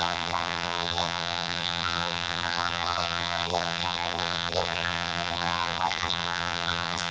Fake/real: fake